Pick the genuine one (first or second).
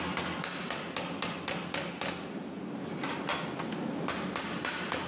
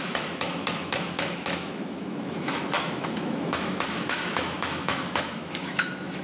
first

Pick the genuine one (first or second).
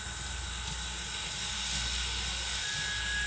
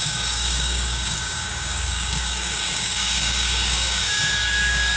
first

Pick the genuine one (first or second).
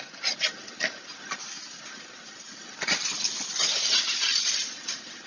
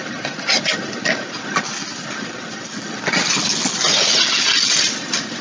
second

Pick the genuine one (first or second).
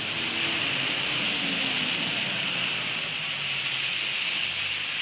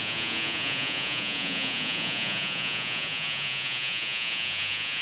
first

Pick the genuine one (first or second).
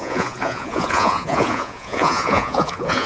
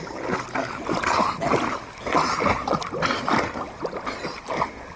second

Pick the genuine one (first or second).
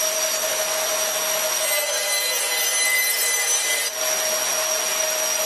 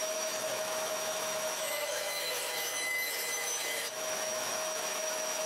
first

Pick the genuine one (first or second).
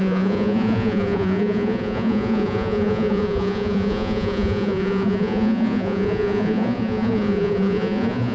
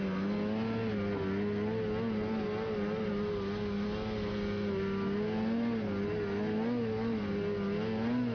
second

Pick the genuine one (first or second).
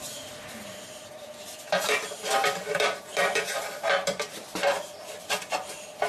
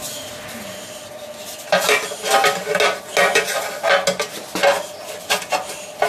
second